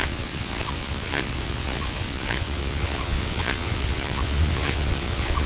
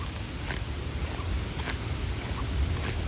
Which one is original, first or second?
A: second